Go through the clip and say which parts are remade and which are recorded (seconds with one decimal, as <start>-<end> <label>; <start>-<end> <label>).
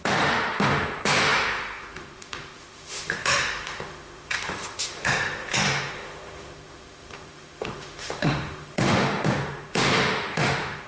0.0-10.9 remade